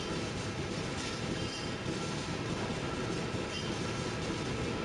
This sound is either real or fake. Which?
real